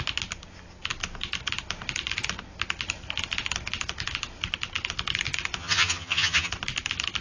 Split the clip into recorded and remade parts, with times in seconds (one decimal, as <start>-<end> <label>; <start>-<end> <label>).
0.0-5.6 recorded; 5.6-6.5 remade; 6.5-7.2 recorded